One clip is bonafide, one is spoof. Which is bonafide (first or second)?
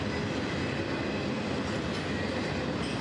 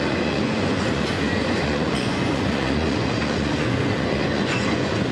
first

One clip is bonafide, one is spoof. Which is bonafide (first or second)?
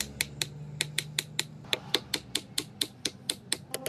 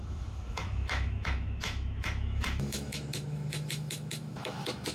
first